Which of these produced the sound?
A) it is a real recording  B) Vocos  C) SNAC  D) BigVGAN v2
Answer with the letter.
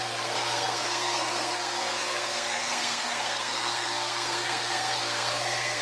C